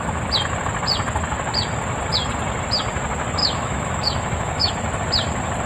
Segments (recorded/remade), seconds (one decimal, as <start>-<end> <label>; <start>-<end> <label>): 0.0-3.4 recorded; 3.4-4.7 remade; 4.7-5.7 recorded